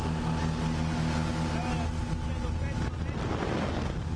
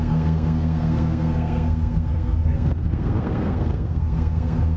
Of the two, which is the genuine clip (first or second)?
first